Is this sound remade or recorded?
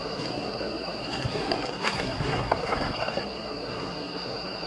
remade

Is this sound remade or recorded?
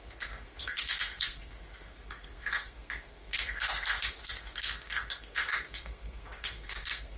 remade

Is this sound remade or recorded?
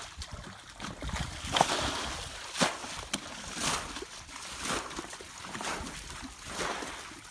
recorded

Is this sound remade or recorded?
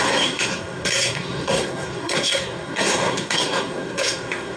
remade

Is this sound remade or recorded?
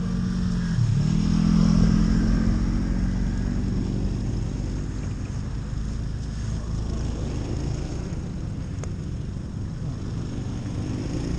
recorded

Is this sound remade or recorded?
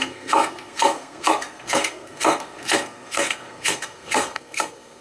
remade